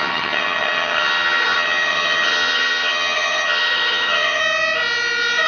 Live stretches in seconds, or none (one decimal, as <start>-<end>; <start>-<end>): 4.4-5.5